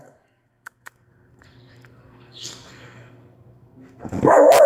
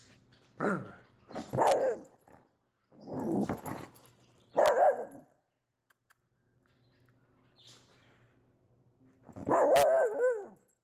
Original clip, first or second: second